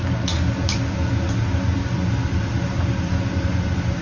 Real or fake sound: real